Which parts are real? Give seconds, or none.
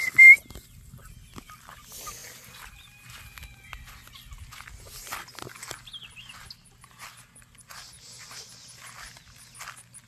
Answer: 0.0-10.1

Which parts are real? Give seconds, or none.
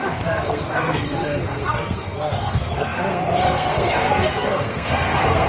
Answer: none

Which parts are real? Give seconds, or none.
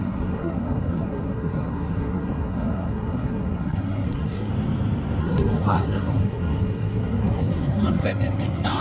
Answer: 4.5-5.2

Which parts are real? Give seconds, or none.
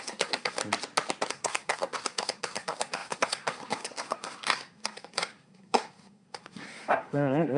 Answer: 0.6-1.3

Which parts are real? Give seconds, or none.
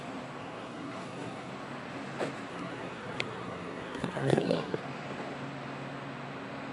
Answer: 0.0-0.4; 1.5-2.5; 4.8-6.7